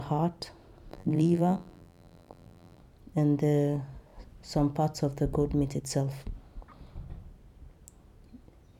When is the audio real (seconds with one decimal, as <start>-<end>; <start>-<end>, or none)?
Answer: 0.0-0.9; 2.8-8.8